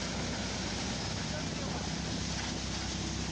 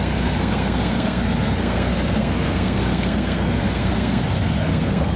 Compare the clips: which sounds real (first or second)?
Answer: first